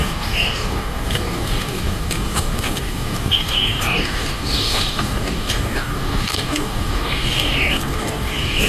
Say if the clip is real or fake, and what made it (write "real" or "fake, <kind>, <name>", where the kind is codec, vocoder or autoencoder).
fake, codec, DAC